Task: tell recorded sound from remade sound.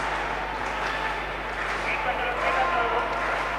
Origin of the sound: recorded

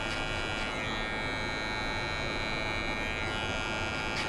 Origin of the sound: recorded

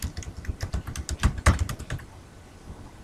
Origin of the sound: recorded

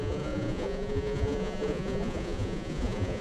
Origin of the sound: remade